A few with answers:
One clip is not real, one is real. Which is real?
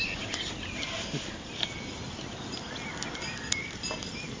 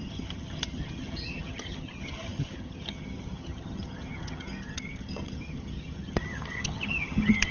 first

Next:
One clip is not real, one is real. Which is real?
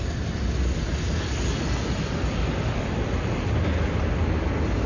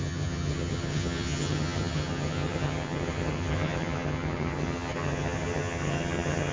first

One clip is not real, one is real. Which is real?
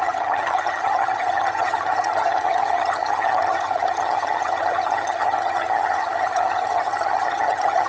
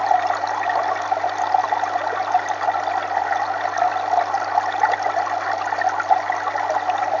second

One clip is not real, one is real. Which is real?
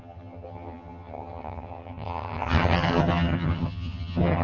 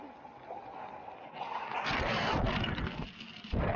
second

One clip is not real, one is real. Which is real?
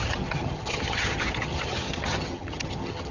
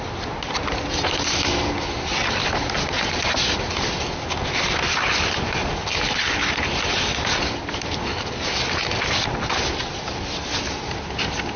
second